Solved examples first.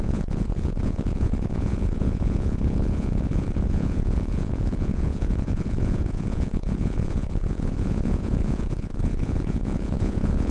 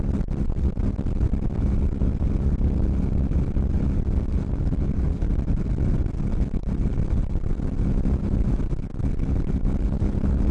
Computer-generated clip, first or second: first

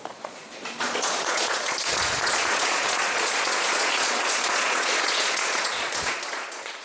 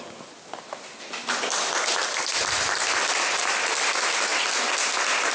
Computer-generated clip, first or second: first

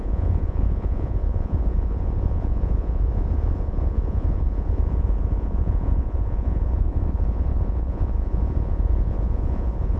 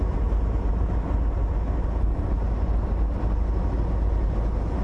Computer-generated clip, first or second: first